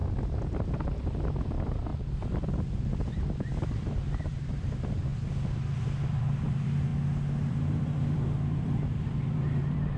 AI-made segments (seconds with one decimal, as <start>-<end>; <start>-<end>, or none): 1.0-5.1; 6.0-6.9; 7.5-10.0